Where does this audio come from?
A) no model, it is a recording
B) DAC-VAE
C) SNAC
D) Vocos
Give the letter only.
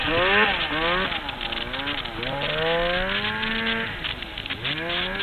A